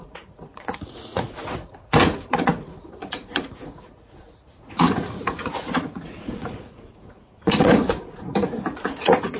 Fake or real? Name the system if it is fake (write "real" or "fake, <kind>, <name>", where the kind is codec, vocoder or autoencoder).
fake, vocoder, Vocos